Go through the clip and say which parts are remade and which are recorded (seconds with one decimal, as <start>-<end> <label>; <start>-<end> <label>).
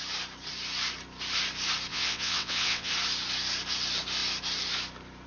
0.0-1.9 recorded; 1.9-2.9 remade; 2.9-5.3 recorded